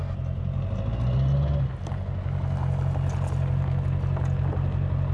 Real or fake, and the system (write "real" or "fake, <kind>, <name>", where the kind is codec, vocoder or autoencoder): real